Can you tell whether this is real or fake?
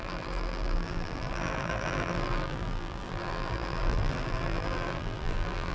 fake